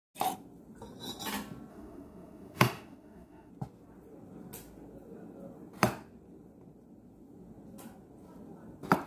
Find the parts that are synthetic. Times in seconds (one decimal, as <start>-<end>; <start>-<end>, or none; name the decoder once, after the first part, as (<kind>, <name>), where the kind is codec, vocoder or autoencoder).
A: 1.7-3.5 (autoencoder, DAC-VAE)